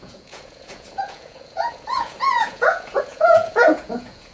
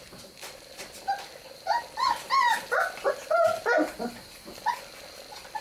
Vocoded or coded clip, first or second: first